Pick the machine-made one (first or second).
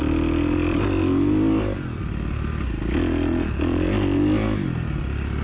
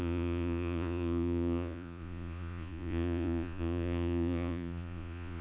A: second